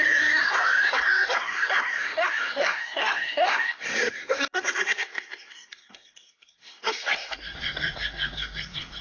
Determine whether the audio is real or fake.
fake